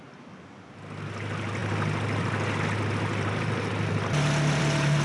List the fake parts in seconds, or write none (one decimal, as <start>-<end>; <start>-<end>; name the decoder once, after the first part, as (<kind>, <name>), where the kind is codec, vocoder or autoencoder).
none